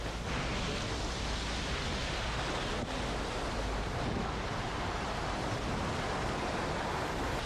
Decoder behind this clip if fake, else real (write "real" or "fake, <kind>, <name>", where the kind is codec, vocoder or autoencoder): real